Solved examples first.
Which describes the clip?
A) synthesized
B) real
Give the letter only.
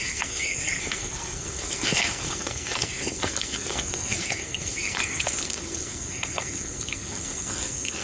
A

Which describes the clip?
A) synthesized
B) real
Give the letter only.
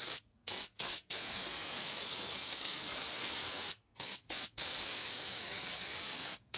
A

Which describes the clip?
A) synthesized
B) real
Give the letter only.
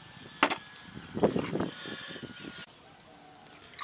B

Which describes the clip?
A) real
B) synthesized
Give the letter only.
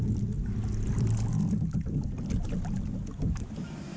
A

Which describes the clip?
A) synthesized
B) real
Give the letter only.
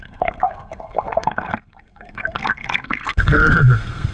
A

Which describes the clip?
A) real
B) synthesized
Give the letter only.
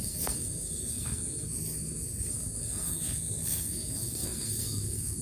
B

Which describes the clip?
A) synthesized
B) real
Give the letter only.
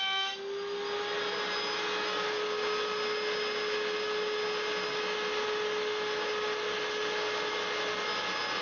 B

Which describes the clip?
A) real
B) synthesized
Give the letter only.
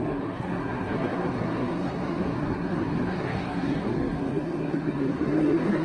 B